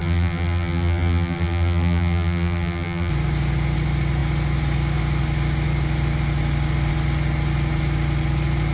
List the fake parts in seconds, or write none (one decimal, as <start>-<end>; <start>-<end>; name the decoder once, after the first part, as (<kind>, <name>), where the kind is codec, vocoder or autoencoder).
0.0-3.1 (vocoder, BigVGAN v2)